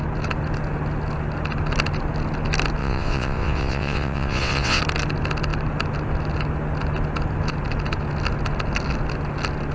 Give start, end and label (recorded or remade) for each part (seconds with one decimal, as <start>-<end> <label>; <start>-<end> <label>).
0.0-2.8 recorded; 2.8-4.8 remade; 4.8-9.7 recorded